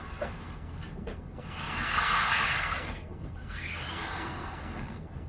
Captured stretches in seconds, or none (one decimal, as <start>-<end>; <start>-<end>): none

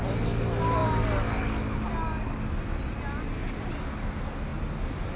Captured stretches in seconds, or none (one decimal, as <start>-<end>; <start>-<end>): 0.0-5.2

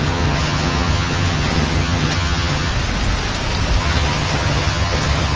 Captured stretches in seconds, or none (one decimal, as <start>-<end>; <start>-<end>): 2.7-3.8